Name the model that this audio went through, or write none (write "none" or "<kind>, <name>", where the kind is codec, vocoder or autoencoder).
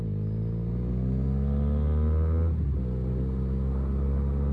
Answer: none